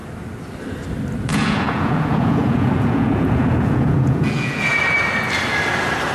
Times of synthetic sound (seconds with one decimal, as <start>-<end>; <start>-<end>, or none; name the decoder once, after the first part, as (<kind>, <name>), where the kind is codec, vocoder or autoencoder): 1.3-4.8 (vocoder, Vocos)